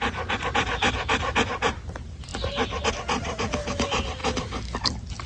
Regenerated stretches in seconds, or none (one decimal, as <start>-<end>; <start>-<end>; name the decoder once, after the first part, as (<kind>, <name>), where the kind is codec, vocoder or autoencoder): none